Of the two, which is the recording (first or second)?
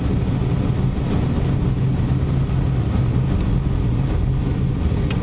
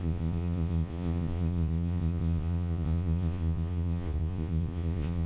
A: first